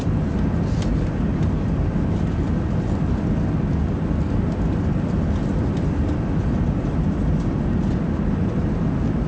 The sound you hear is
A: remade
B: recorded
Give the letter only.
B